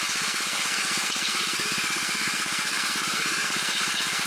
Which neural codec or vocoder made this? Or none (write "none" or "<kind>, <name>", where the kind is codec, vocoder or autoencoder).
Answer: codec, SNAC